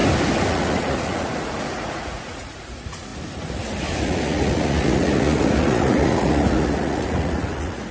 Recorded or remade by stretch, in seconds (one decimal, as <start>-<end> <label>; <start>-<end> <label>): 0.0-0.5 recorded; 0.5-3.1 remade; 3.1-4.0 recorded; 4.0-7.9 remade

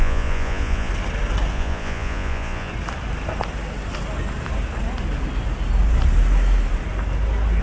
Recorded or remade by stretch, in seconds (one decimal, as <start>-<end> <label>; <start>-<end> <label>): 0.0-0.9 remade; 0.9-1.5 recorded; 1.5-2.7 remade; 2.7-7.6 recorded